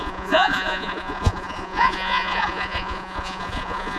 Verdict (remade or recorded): remade